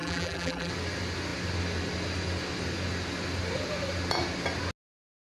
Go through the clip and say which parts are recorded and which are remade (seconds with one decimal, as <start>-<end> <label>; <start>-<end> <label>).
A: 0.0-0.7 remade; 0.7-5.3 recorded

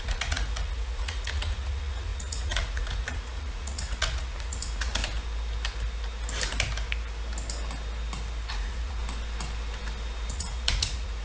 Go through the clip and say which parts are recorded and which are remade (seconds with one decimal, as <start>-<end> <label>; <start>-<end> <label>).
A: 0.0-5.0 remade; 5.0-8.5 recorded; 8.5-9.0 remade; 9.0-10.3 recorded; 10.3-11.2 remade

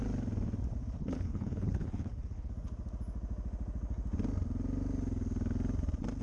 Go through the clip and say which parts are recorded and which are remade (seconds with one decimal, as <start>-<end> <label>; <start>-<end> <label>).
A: 0.0-1.0 recorded; 1.0-2.5 remade; 2.5-6.2 recorded

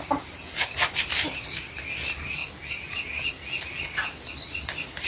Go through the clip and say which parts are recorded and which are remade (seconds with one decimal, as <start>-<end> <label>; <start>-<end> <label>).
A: 0.0-5.1 recorded

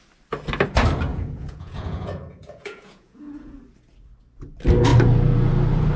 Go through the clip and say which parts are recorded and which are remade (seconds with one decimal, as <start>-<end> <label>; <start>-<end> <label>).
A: 0.0-1.1 recorded; 1.1-3.6 remade; 3.6-6.0 recorded

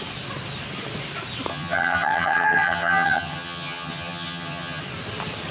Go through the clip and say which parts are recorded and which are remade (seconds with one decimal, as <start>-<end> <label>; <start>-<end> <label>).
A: 0.0-1.5 recorded; 1.5-4.8 remade; 4.8-5.5 recorded

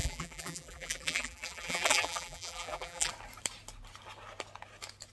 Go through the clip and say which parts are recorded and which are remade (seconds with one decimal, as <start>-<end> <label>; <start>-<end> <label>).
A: 0.0-3.1 remade; 3.1-5.1 recorded

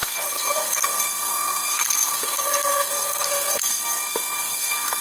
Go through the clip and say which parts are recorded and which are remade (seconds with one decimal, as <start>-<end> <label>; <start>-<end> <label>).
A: 0.0-5.0 remade